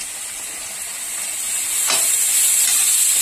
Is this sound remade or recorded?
recorded